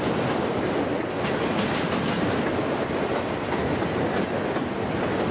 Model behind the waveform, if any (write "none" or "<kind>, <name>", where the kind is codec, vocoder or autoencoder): none